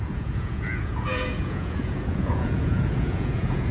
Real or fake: fake